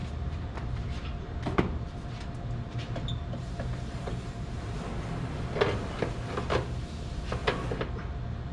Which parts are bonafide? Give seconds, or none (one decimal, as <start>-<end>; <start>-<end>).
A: 4.9-8.5